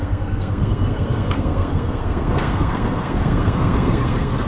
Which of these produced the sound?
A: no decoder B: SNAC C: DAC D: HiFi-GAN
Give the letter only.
B